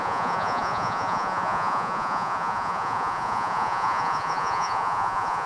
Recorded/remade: remade